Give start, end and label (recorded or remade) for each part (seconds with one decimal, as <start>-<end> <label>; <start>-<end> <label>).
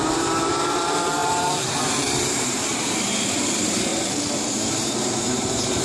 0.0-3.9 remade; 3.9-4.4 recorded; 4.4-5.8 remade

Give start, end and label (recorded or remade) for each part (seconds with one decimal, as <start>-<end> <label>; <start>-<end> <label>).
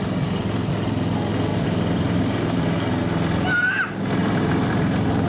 0.0-1.5 recorded; 1.5-2.8 remade; 2.8-4.2 recorded; 4.2-5.3 remade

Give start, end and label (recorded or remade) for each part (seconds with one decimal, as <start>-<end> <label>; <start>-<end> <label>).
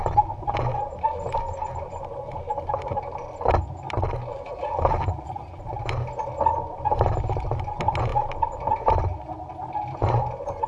0.0-4.3 recorded; 4.3-5.3 remade; 5.3-10.7 recorded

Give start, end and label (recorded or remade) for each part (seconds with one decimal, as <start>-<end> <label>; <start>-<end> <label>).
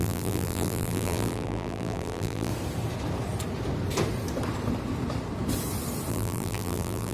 0.0-2.5 remade; 2.5-6.1 recorded; 6.1-7.1 remade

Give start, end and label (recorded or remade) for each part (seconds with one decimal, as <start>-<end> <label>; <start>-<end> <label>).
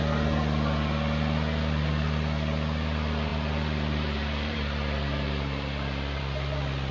0.0-3.3 recorded; 3.3-6.2 remade; 6.2-6.9 recorded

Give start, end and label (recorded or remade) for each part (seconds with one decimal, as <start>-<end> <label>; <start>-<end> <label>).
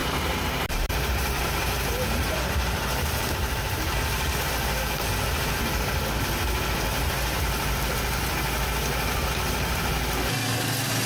0.0-5.1 remade; 5.1-11.1 recorded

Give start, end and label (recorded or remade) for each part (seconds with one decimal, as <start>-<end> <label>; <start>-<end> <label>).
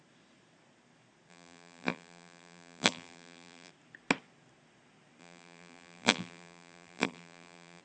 0.0-1.3 recorded; 1.3-3.7 remade; 3.7-5.2 recorded; 5.2-7.8 remade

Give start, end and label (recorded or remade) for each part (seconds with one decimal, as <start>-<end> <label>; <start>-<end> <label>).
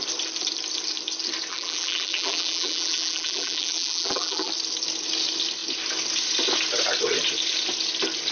0.0-1.5 recorded; 1.5-4.5 remade; 4.5-8.3 recorded